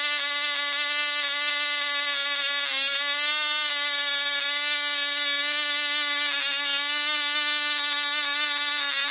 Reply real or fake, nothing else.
real